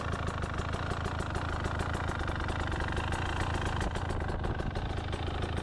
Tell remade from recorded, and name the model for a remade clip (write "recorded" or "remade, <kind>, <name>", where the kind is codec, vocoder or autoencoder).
recorded